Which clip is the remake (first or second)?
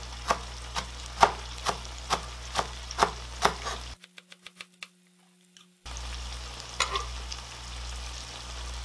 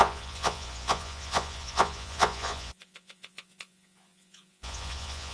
second